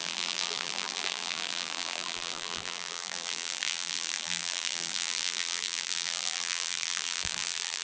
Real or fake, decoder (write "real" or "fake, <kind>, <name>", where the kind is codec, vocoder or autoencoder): fake, vocoder, BigVGAN v2